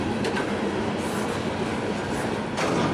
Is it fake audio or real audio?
real